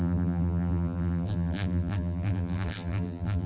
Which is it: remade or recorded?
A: remade